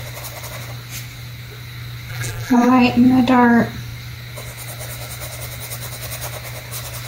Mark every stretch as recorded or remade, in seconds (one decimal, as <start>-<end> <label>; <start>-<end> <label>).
0.0-2.1 recorded; 2.1-2.7 remade; 2.7-7.1 recorded